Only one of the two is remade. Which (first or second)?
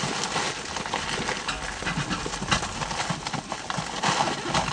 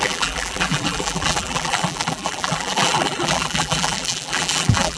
second